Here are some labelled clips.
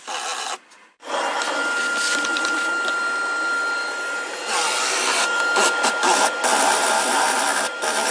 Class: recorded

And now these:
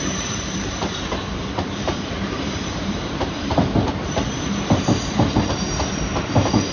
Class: remade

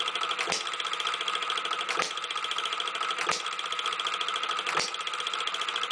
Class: recorded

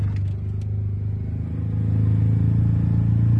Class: recorded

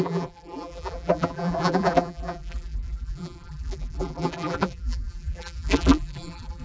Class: remade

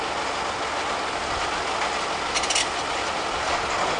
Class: recorded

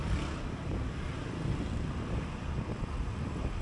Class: recorded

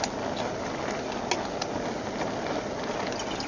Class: recorded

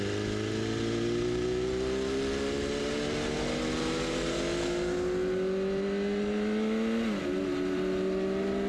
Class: recorded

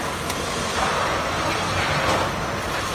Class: recorded